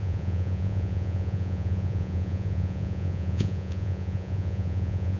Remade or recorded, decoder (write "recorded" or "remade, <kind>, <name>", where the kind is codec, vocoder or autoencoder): remade, vocoder, Vocos